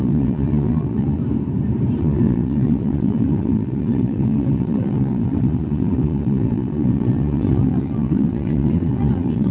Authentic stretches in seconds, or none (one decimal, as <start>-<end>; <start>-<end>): 1.2-2.0